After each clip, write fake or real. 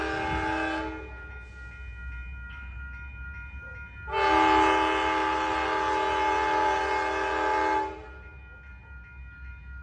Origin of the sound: real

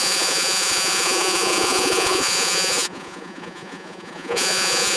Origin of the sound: fake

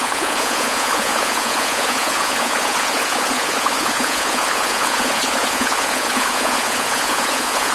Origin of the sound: fake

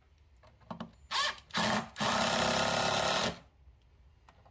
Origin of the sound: real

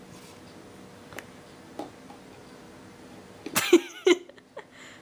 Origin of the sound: real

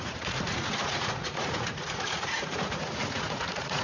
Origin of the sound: fake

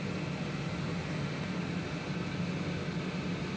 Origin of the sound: real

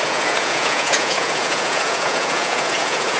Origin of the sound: fake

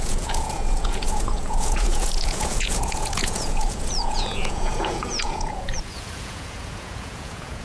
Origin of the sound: fake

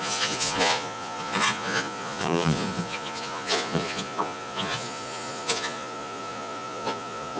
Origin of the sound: fake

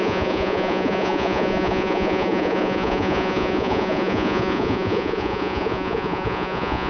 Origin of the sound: fake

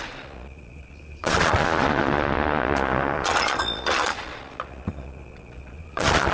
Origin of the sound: fake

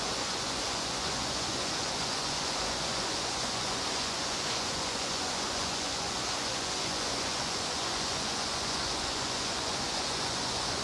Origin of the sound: fake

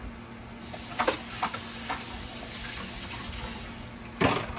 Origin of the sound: real